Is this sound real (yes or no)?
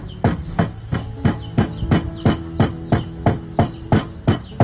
yes